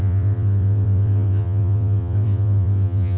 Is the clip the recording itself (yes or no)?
no